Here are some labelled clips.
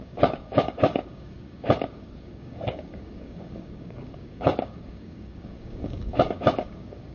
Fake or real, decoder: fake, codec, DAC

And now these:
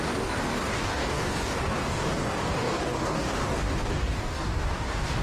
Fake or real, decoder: fake, codec, DAC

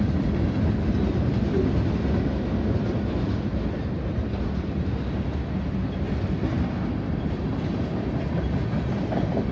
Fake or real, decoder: real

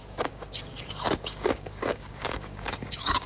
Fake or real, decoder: fake, codec, DAC